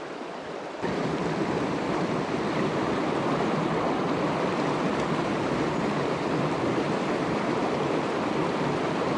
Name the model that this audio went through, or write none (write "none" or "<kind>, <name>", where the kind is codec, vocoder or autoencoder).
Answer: vocoder, BigVGAN v2